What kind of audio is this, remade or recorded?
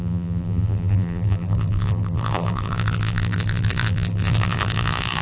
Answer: remade